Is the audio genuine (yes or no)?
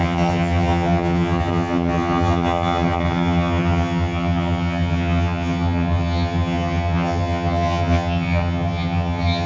no